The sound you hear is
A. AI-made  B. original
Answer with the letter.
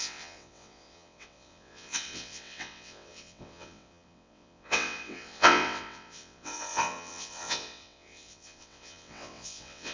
A